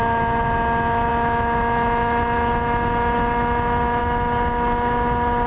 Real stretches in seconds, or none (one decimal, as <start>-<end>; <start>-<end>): 0.0-5.5